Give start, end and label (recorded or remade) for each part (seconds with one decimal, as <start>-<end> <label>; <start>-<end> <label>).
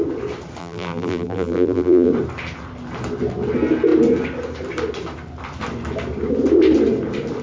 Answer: 0.0-0.6 recorded; 0.6-2.1 remade; 2.1-7.4 recorded